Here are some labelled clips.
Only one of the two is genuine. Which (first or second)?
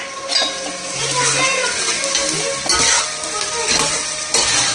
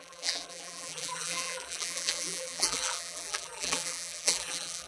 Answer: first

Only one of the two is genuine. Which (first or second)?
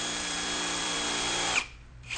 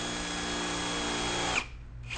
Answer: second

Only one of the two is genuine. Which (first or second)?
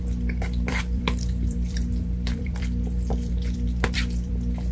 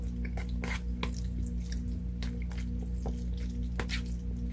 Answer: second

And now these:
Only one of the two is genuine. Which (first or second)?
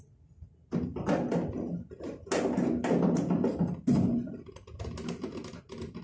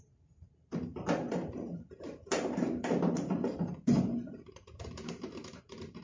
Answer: first